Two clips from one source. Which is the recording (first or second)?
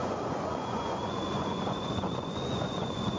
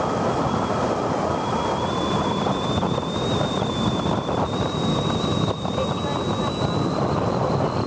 second